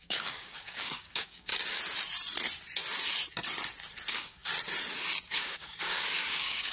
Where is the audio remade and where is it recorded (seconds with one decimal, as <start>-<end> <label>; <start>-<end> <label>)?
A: 0.0-1.5 remade; 1.5-4.1 recorded; 4.1-4.5 remade; 4.5-5.3 recorded; 5.3-6.7 remade